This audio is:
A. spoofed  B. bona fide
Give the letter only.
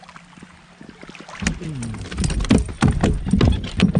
B